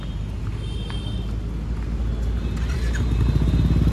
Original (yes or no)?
yes